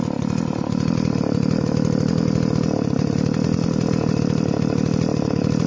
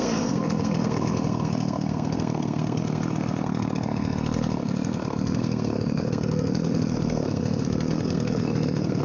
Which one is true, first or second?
first